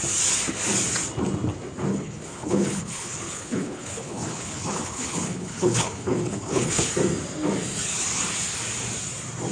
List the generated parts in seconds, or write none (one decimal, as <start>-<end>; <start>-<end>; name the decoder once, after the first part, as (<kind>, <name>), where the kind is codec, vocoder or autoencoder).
1.9-6.9 (codec, HILCodec)